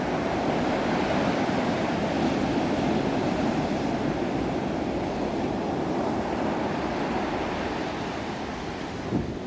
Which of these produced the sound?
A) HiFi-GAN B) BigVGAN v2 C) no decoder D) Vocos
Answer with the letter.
C